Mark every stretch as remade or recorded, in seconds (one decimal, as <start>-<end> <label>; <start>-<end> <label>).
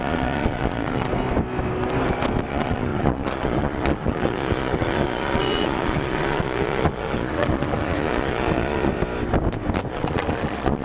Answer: 0.0-1.1 remade; 1.1-2.5 recorded; 2.5-8.9 remade; 8.9-9.9 recorded; 9.9-10.8 remade